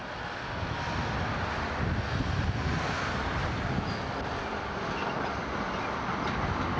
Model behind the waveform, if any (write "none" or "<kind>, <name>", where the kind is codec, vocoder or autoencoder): none